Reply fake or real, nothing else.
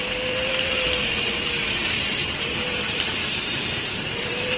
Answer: fake